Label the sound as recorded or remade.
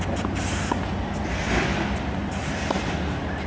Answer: recorded